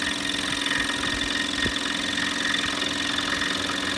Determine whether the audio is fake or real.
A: real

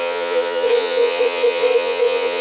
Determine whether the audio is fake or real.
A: fake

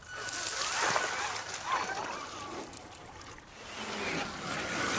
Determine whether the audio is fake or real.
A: real